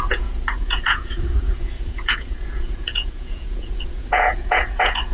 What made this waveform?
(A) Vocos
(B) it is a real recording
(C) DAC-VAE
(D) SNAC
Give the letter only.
A